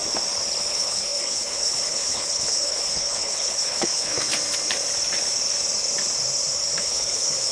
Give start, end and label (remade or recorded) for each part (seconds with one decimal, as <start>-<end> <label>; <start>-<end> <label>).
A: 0.0-0.7 recorded; 0.7-4.3 remade; 4.3-6.8 recorded; 6.8-7.5 remade